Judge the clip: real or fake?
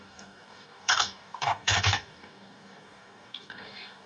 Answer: fake